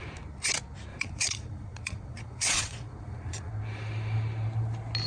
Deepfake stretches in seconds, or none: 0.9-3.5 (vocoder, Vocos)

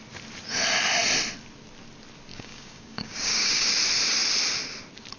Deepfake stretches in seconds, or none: 2.3-3.7 (codec, DAC)

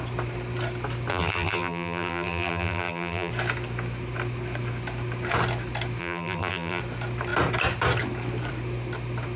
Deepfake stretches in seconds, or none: 1.1-3.3 (vocoder, BigVGAN v2); 6.0-6.8

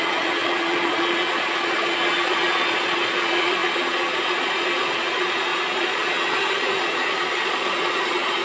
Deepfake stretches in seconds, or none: 0.0-8.4 (vocoder, Vocos)

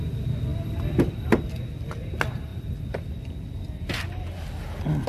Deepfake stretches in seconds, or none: none

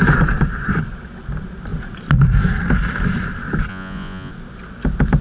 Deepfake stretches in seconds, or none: 3.7-4.3 (vocoder, Vocos)

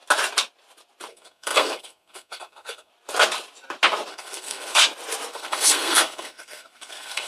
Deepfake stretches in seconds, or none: 1.1-2.9 (codec, SNAC); 4.1-4.8; 5.3-7.3